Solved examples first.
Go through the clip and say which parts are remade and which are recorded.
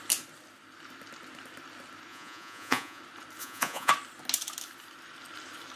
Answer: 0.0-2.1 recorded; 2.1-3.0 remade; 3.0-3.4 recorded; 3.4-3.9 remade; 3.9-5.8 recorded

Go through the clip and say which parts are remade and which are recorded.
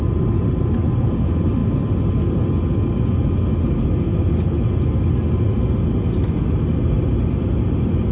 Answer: 0.0-8.1 recorded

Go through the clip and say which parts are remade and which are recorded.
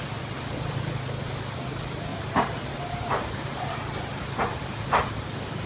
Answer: 0.0-5.7 recorded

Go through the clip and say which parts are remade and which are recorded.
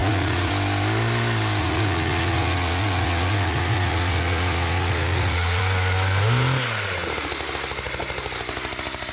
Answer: 0.0-0.5 remade; 0.5-1.6 recorded; 1.6-5.6 remade; 5.6-9.1 recorded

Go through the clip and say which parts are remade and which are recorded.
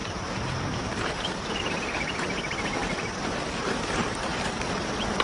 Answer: 0.0-2.8 remade; 2.8-3.6 recorded; 3.6-4.3 remade; 4.3-5.2 recorded